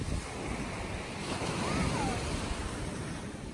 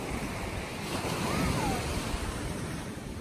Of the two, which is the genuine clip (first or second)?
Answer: first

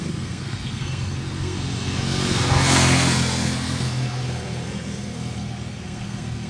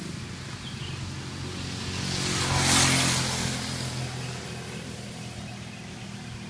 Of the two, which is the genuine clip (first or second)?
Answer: second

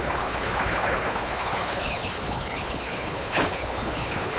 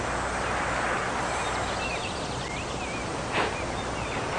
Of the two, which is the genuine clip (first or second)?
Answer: second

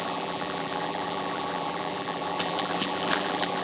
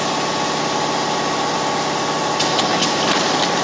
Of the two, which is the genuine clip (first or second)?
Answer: second